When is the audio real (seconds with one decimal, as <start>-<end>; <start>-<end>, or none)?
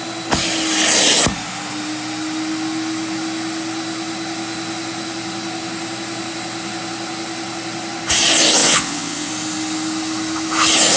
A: 0.0-8.6; 9.3-11.0